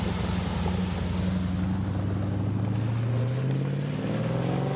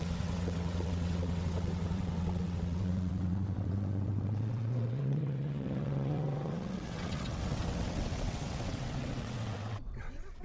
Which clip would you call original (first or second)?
first